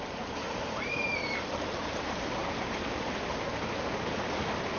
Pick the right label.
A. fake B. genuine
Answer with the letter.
A